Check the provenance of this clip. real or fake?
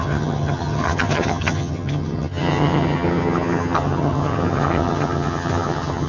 fake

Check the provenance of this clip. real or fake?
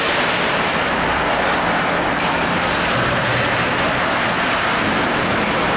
real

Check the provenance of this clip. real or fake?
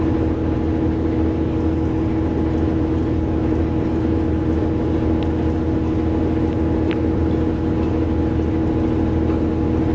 real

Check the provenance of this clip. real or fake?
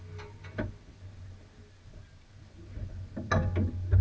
real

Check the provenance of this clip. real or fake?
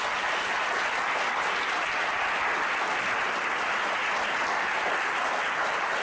real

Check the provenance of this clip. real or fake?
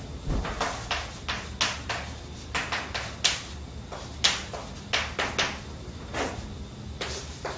real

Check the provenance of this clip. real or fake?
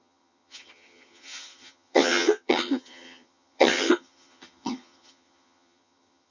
fake